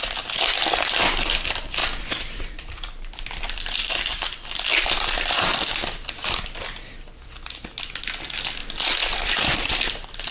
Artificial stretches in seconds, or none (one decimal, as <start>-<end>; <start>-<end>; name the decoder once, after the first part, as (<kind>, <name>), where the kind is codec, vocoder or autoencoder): 1.8-5.7 (vocoder, BigVGAN v2); 8.6-9.9